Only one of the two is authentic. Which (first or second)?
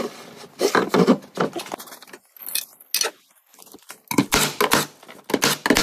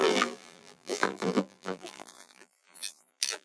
first